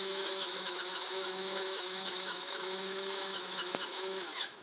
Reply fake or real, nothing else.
fake